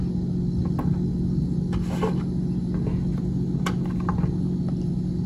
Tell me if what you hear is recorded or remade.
recorded